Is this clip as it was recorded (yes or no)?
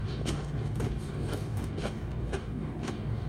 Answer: no